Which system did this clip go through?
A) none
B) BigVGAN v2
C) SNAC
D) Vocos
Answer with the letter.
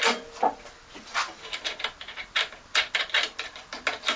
A